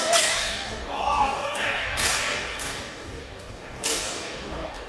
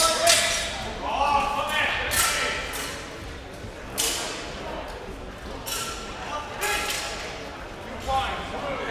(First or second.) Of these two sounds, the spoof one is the first